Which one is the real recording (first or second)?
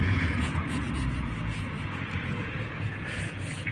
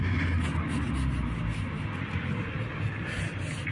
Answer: second